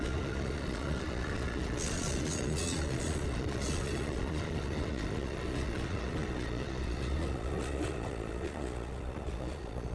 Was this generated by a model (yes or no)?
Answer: yes